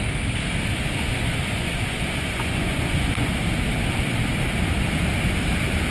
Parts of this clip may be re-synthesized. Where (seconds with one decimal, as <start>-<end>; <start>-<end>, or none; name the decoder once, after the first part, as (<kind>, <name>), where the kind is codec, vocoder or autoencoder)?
0.7-3.3 (vocoder, Vocos)